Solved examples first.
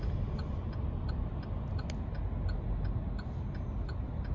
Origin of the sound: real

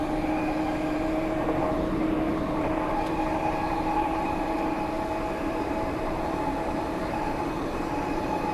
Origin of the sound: fake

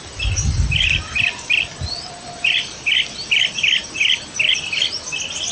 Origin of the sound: real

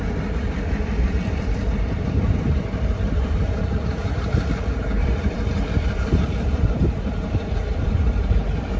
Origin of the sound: fake